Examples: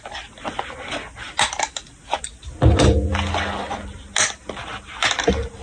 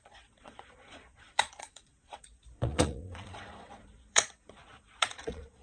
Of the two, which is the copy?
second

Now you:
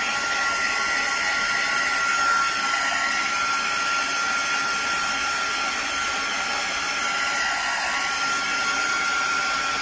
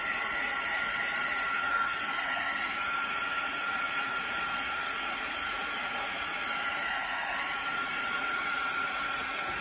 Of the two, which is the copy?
second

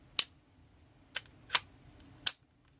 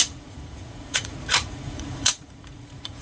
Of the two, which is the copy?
second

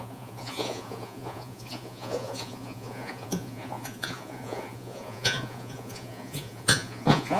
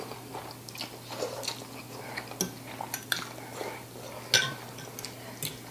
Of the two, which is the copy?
first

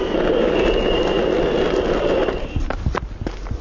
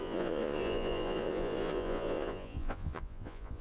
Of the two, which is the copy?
second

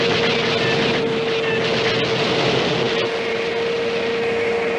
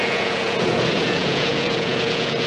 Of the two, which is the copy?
second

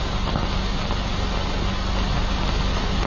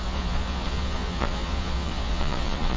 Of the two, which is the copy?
second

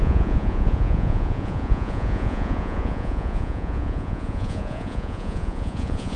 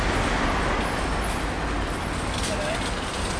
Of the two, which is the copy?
first